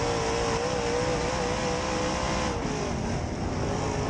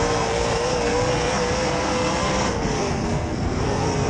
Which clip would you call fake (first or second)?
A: second